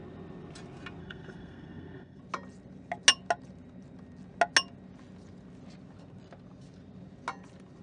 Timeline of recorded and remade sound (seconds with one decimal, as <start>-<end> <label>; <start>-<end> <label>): 0.0-1.0 recorded; 1.0-2.2 remade; 2.2-7.8 recorded